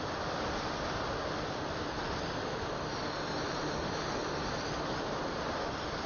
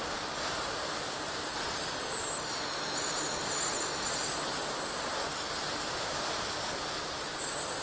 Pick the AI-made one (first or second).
first